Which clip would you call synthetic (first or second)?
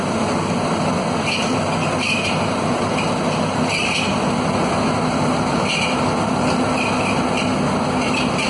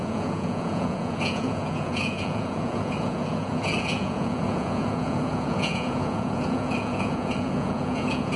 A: second